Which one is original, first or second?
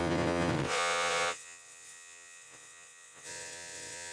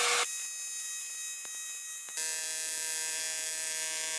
second